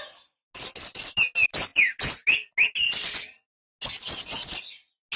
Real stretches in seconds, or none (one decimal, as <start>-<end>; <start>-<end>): 0.0-5.2